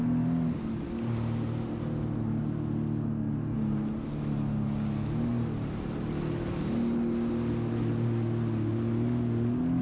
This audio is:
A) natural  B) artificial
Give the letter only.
A